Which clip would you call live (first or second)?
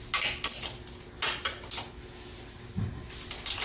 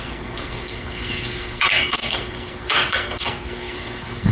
first